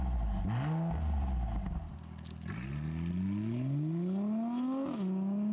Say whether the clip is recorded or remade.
recorded